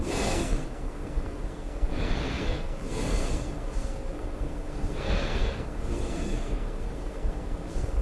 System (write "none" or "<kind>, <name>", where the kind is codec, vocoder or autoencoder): codec, SNAC